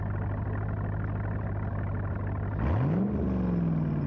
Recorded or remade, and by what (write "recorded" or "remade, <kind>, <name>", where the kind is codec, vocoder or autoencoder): recorded